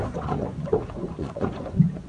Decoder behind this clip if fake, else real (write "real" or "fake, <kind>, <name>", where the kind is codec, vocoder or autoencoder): fake, vocoder, Vocos